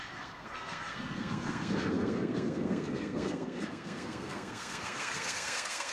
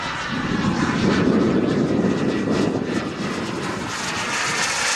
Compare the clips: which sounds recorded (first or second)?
second